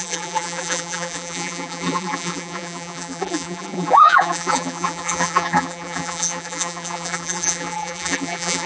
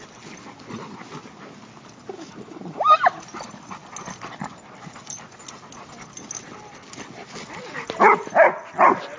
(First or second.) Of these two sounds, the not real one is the first